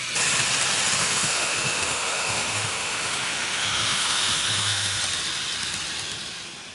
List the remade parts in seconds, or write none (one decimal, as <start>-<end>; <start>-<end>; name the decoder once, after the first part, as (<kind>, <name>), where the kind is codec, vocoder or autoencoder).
1.0-5.0 (autoencoder, DAC-VAE)